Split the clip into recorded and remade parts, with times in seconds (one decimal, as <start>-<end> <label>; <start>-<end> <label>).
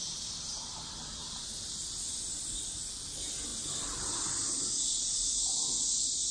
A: 0.0-6.3 recorded